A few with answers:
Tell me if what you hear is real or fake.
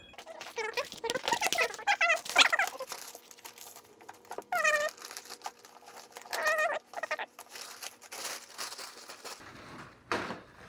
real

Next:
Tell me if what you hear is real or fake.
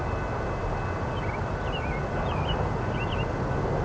real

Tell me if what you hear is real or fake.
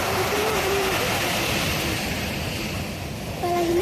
fake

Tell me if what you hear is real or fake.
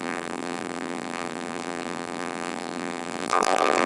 fake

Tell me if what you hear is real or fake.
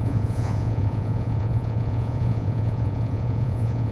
fake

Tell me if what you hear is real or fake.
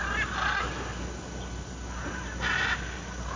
real